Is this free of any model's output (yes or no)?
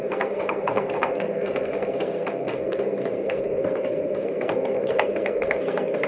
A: no